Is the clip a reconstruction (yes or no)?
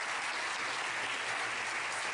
no